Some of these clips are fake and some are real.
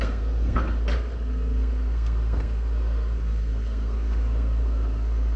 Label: fake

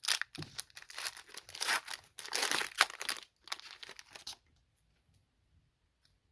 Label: real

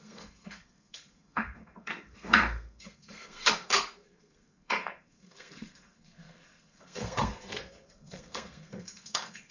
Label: fake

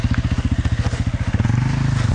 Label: real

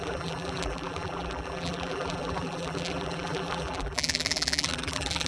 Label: fake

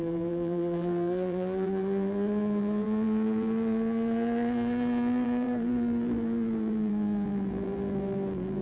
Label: fake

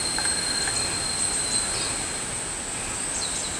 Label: real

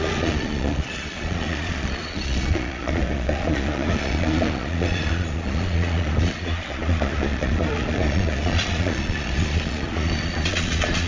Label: fake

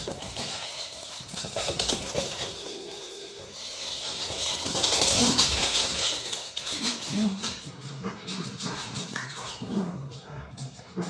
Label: fake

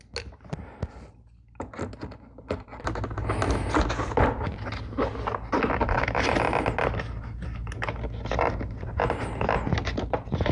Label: real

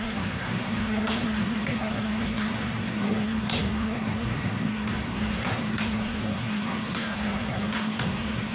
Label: fake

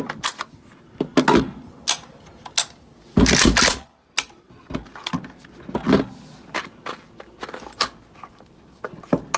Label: real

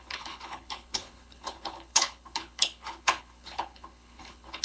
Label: fake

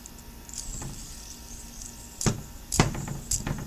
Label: fake